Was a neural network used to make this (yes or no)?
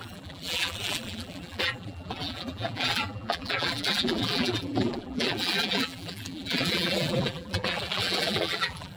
yes